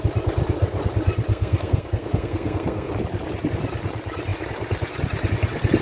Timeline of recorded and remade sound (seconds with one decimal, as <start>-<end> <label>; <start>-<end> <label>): 0.0-1.3 recorded; 1.3-2.9 remade; 2.9-5.8 recorded